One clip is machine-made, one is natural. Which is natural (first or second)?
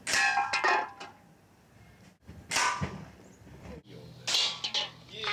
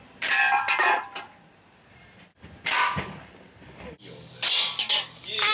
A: first